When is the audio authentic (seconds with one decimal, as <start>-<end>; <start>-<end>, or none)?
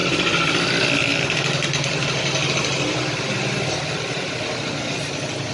0.0-1.1; 2.2-5.5